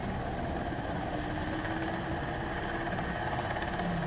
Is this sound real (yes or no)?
yes